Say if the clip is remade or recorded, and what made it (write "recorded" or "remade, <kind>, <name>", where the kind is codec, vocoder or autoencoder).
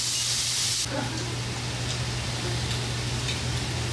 recorded